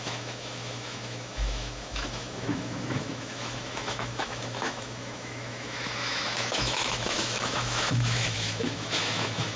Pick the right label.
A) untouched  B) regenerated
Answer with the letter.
B